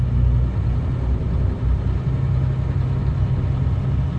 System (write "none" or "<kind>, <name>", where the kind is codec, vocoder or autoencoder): none